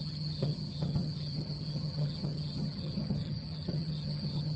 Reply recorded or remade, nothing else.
remade